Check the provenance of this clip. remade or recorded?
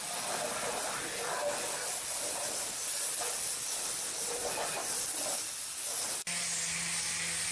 recorded